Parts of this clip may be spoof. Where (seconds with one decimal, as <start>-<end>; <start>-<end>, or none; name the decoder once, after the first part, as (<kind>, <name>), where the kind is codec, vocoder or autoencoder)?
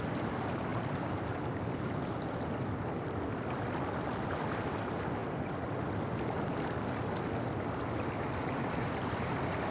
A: none